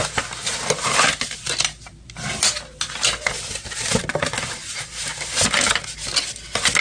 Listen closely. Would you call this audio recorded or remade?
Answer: recorded